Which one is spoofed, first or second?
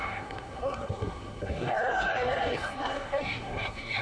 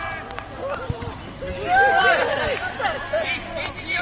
first